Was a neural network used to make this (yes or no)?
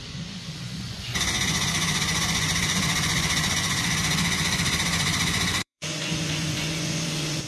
yes